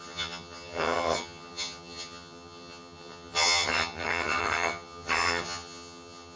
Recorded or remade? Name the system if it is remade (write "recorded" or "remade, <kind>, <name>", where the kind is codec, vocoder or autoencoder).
remade, vocoder, HiFi-GAN